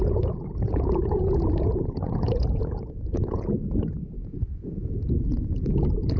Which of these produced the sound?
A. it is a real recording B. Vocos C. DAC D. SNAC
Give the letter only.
B